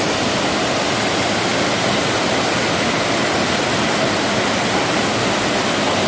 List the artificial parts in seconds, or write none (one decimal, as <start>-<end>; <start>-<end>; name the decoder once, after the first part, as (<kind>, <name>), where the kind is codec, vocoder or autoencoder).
none